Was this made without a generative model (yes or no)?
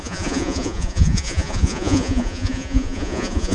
no